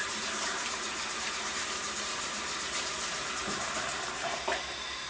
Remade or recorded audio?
remade